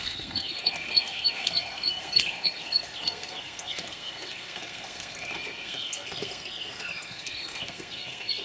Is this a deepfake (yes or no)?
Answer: yes